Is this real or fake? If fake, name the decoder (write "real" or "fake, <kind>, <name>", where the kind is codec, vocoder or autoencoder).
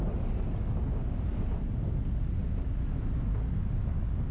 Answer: real